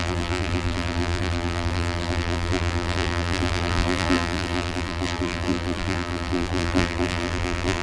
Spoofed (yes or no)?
yes